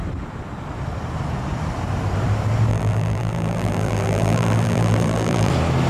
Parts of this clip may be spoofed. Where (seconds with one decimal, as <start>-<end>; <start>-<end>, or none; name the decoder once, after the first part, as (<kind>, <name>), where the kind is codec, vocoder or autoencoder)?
2.7-5.5 (vocoder, BigVGAN v2)